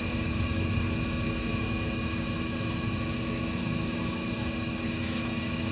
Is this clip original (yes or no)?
no